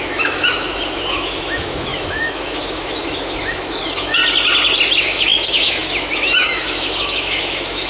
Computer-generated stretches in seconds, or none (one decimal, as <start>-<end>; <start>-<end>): 0.0-4.2; 5.0-7.9